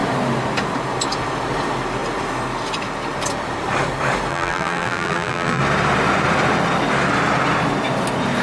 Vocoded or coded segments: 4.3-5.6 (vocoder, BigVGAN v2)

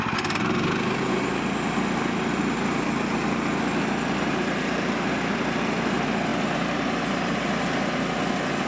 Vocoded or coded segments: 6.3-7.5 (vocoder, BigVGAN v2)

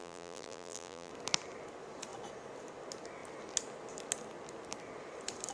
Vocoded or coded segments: 0.0-1.1 (vocoder, BigVGAN v2)